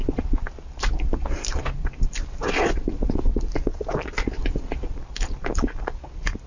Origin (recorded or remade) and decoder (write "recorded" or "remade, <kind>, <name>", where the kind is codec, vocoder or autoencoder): recorded